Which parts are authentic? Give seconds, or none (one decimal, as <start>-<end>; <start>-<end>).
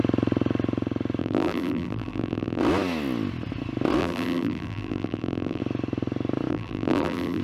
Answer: 0.0-1.2; 2.6-4.0; 5.6-6.5